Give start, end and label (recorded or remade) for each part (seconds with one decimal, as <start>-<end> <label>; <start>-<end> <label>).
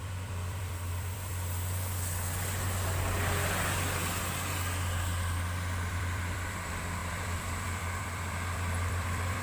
0.0-1.3 remade; 1.3-5.9 recorded; 5.9-9.4 remade